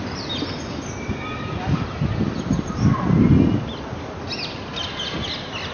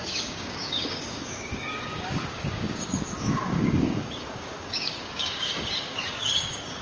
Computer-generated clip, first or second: second